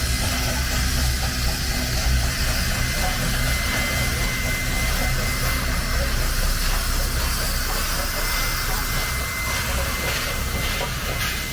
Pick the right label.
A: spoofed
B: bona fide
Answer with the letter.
B